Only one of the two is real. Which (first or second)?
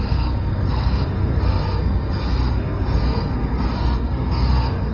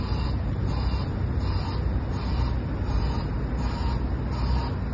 second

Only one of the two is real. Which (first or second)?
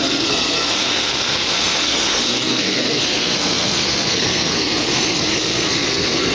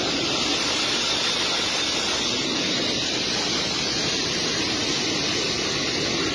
second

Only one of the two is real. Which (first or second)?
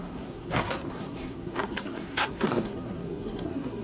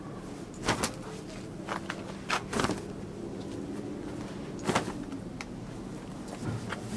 second